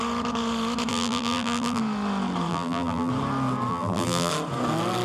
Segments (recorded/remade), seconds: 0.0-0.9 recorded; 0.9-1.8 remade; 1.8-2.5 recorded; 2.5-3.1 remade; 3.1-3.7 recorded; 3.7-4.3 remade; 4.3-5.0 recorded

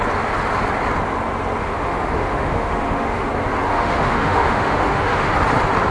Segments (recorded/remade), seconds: 0.0-1.6 recorded; 1.6-3.3 remade; 3.3-3.7 recorded; 3.7-5.3 remade; 5.3-5.9 recorded

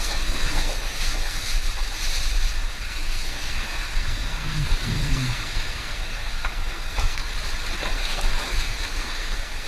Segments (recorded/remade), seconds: 0.0-1.6 remade; 1.6-2.7 recorded; 2.7-7.3 remade; 7.3-7.9 recorded; 7.9-9.7 remade

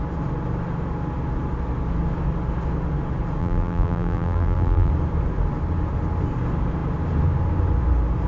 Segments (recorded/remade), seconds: 0.0-3.4 recorded; 3.4-4.9 remade; 4.9-8.3 recorded

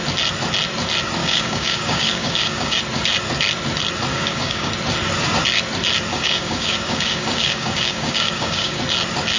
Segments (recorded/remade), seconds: 0.0-1.2 recorded; 1.2-2.8 remade; 2.8-4.1 recorded; 4.1-4.7 remade; 4.7-6.1 recorded; 6.1-8.8 remade; 8.8-9.4 recorded

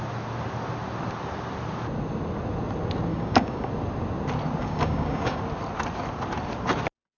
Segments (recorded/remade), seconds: 0.0-3.1 recorded; 3.1-3.7 remade; 3.7-4.6 recorded; 4.6-5.4 remade; 5.4-7.2 recorded

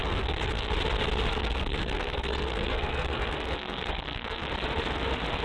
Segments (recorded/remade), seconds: 0.0-0.7 remade; 0.7-1.3 recorded; 1.3-4.5 remade; 4.5-5.4 recorded

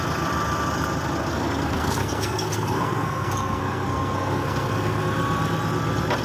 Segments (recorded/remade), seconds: 0.0-1.3 recorded; 1.3-5.0 remade; 5.0-6.2 recorded